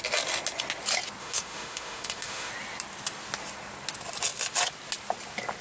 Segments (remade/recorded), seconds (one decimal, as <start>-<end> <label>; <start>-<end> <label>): 0.0-1.2 recorded; 1.2-2.5 remade; 2.5-5.6 recorded